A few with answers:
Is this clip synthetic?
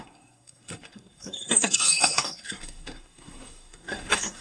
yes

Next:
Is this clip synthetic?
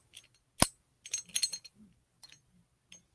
no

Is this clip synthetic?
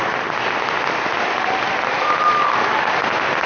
no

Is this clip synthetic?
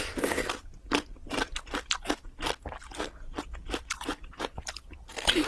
no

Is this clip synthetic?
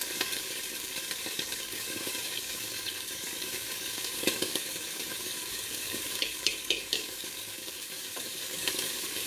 yes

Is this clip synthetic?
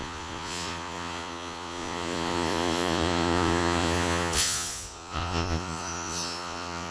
yes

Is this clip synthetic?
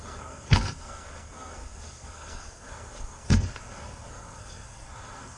yes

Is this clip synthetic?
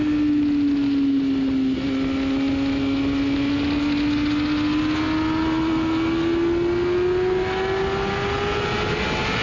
no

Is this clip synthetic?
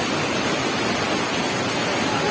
no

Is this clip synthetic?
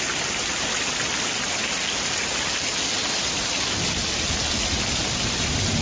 no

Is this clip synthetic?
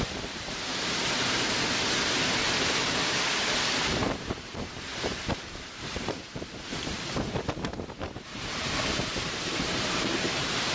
yes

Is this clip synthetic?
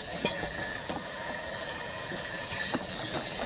yes